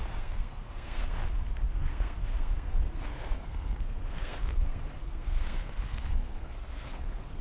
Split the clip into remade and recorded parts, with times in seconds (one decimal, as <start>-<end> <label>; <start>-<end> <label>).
0.0-1.2 remade; 1.2-1.8 recorded; 1.8-7.4 remade